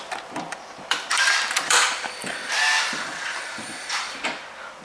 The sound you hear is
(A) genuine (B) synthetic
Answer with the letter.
B